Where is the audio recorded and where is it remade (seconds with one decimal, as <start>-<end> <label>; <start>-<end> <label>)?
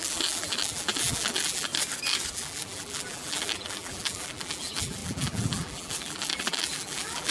0.0-1.7 remade; 1.7-2.3 recorded; 2.3-7.3 remade